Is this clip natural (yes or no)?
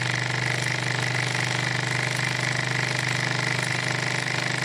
yes